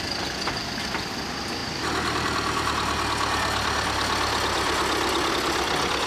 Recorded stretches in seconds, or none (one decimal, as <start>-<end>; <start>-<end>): 0.0-6.1